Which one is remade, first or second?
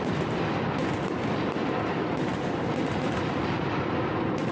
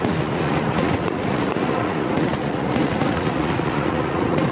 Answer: second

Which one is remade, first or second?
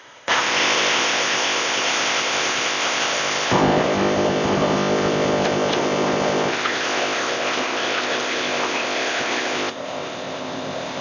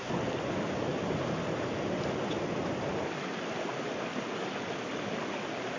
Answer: first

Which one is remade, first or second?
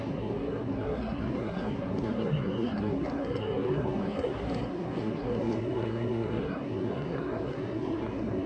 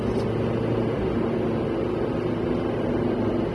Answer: first